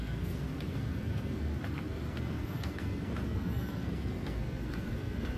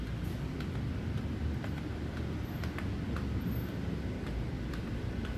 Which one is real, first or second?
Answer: second